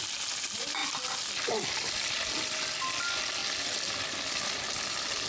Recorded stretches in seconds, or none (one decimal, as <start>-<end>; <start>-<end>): 0.0-5.3